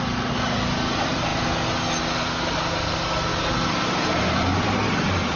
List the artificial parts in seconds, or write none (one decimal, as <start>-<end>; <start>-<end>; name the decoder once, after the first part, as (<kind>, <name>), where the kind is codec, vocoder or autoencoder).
3.3-4.7 (vocoder, BigVGAN v2)